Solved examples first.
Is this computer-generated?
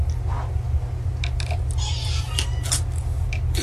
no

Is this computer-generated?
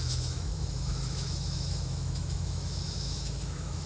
yes